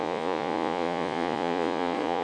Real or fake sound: fake